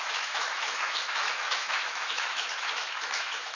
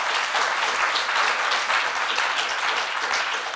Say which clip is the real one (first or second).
second